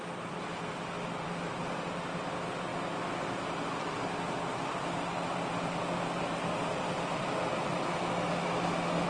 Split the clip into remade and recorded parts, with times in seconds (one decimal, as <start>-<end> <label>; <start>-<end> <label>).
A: 0.0-9.1 recorded